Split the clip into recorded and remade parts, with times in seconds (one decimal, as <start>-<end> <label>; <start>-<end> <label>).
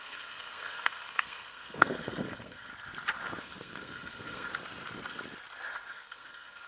0.0-2.7 remade; 2.7-3.4 recorded; 3.4-4.5 remade; 4.5-5.9 recorded; 5.9-6.7 remade